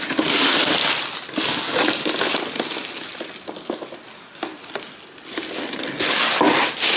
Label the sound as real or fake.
real